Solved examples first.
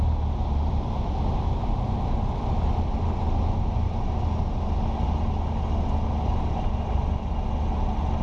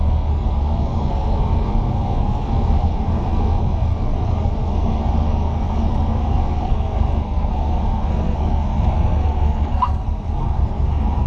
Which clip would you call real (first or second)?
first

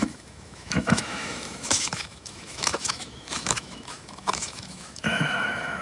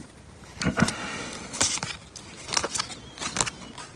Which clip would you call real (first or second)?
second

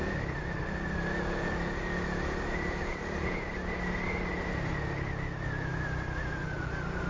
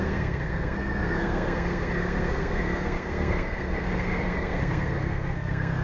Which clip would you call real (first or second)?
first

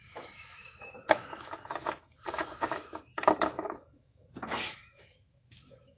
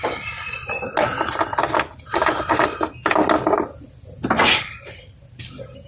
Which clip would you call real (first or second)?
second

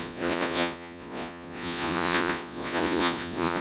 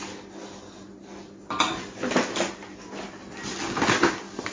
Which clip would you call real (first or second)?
second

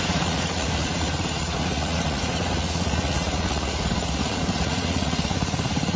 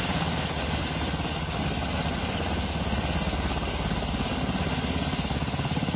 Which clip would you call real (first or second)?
second